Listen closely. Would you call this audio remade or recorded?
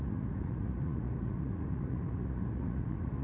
remade